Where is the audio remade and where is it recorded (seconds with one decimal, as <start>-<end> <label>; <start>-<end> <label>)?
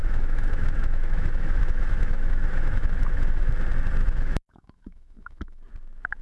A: 0.0-3.5 remade; 3.5-4.0 recorded; 4.0-5.6 remade; 5.6-6.2 recorded